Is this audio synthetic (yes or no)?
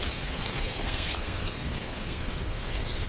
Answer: yes